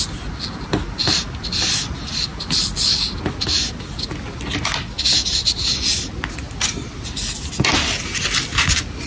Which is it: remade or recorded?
recorded